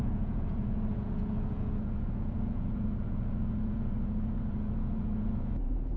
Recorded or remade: remade